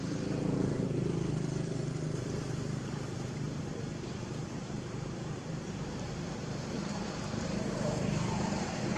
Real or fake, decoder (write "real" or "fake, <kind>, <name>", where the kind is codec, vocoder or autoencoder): fake, vocoder, BigVGAN v2